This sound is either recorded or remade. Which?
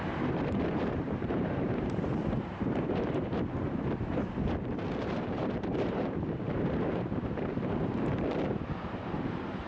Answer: remade